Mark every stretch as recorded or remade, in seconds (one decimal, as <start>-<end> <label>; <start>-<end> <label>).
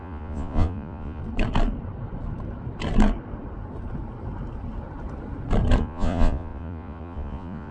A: 0.0-1.2 remade; 1.2-5.8 recorded; 5.8-7.7 remade